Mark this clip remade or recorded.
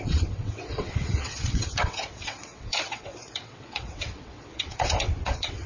remade